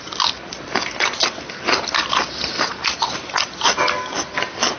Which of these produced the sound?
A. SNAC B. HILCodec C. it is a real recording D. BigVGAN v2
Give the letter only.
C